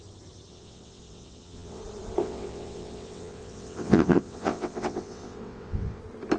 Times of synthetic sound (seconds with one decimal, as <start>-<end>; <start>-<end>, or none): 0.5-1.8; 2.2-6.0